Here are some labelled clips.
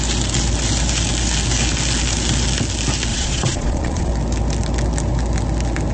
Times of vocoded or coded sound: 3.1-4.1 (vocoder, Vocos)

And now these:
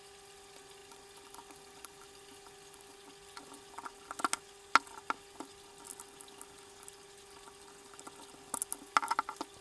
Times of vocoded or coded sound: none

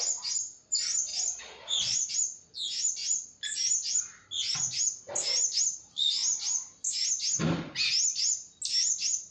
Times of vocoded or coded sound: 1.1-2.1 (vocoder, Vocos)

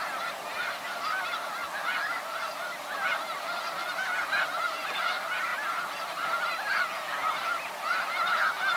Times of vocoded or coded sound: none

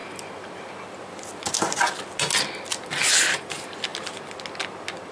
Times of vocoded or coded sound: none

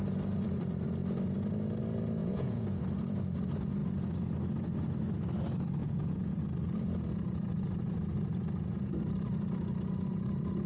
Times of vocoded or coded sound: 2.2-2.8 (vocoder, Vocos); 5.8-6.4

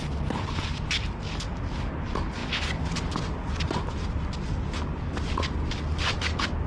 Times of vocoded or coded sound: none